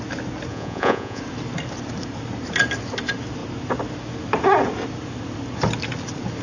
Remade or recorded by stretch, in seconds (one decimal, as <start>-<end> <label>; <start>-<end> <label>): 0.0-0.5 recorded; 0.5-1.2 remade; 1.2-6.4 recorded